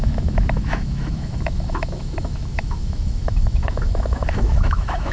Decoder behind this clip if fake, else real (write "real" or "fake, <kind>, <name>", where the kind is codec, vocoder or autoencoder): fake, autoencoder, DAC-VAE